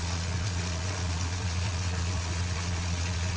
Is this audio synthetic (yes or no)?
yes